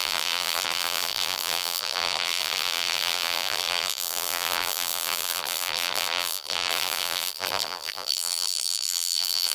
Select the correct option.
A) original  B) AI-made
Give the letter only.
B